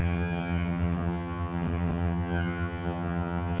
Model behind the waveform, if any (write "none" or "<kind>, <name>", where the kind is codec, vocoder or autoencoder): vocoder, HiFi-GAN